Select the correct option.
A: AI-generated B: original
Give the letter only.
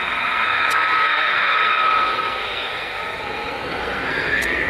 A